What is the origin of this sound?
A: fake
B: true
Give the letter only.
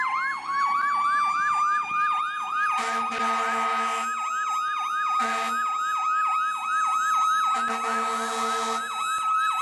B